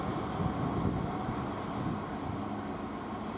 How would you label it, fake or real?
real